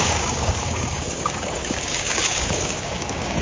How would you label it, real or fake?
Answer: fake